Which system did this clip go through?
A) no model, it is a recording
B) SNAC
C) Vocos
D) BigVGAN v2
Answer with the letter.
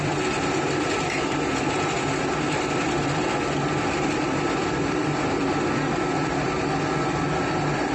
D